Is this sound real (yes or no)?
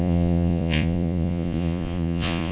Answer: no